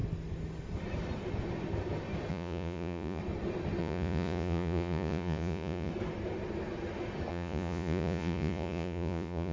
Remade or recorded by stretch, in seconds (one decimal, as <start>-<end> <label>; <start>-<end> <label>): 0.0-2.3 recorded; 2.3-3.2 remade; 3.2-3.8 recorded; 3.8-5.9 remade; 5.9-7.3 recorded; 7.3-9.5 remade